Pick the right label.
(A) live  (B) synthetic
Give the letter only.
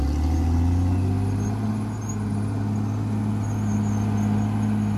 A